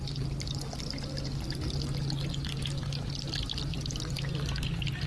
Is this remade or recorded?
recorded